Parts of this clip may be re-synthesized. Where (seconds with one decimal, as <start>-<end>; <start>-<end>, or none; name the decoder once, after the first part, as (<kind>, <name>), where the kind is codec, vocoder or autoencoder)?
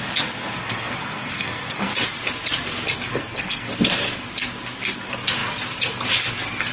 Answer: 0.6-1.9 (codec, SNAC); 3.1-3.7